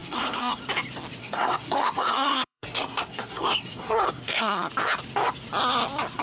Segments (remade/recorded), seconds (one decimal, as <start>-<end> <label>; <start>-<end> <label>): 0.0-0.6 remade; 0.6-1.2 recorded; 1.2-4.7 remade; 4.7-6.2 recorded